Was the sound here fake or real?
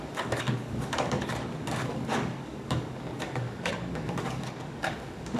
fake